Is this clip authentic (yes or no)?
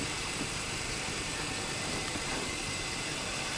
no